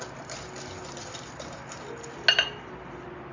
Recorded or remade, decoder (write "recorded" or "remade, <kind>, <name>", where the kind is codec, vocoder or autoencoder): recorded